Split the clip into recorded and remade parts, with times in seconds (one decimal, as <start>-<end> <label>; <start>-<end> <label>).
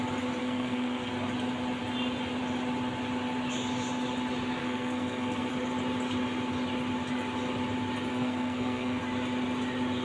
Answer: 0.0-0.4 recorded; 0.4-1.1 remade; 1.1-4.6 recorded; 4.6-5.5 remade; 5.5-8.1 recorded; 8.1-9.0 remade; 9.0-10.0 recorded